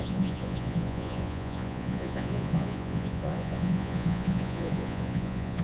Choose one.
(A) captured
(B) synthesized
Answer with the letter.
B